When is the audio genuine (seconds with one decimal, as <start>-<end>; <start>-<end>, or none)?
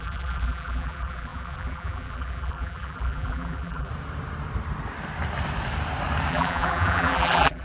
3.9-6.3